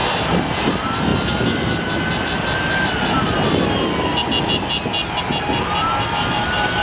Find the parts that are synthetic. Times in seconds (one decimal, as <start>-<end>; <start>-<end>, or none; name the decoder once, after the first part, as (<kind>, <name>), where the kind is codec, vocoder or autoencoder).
none